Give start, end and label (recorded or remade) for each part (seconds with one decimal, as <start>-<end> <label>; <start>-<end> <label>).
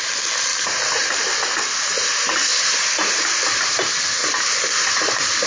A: 0.0-0.5 recorded; 0.5-2.1 remade; 2.1-5.5 recorded